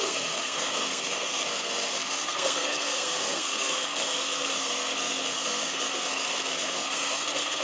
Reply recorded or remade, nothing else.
remade